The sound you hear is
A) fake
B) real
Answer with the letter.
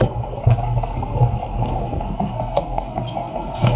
A